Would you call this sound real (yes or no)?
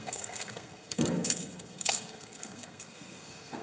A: no